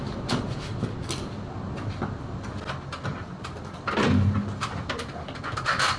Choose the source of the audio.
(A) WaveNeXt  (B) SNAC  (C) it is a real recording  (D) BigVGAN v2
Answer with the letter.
C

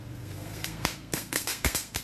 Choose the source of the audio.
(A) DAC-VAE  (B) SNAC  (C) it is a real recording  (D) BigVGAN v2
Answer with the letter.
B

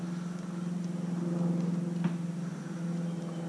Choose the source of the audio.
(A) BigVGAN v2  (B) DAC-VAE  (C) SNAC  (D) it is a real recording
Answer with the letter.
D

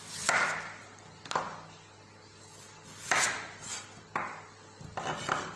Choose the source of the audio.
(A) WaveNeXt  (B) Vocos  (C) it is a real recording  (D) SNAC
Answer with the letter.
C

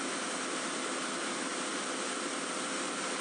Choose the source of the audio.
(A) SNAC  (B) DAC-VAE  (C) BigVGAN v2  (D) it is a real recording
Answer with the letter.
D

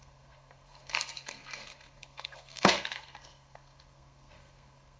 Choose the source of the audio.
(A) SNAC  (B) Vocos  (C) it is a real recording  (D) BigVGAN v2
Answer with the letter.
A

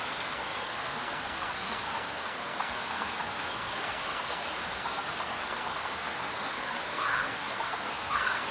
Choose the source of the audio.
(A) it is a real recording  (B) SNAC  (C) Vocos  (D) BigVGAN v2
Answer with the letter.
B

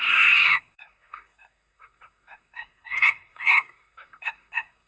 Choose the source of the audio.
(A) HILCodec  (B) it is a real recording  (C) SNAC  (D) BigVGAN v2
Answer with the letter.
C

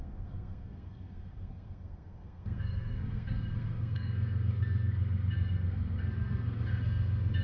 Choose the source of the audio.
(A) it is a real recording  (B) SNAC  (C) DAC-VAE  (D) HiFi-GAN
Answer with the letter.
B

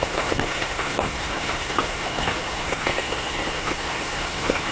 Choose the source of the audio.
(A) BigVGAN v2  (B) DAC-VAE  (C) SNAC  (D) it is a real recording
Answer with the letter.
C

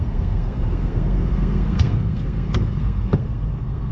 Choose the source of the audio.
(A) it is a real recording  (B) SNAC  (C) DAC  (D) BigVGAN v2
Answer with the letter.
B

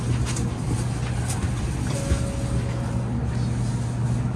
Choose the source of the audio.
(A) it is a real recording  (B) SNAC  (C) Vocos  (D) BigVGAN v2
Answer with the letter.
A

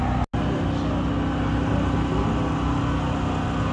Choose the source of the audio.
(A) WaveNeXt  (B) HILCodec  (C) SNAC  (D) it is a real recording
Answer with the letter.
D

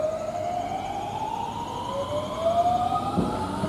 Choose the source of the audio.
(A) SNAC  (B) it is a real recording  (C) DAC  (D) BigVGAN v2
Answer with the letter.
B